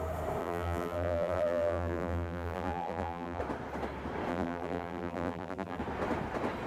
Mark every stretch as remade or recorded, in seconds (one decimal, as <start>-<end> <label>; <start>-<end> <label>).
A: 0.0-0.4 recorded; 0.4-3.4 remade; 3.4-4.3 recorded; 4.3-5.8 remade; 5.8-6.7 recorded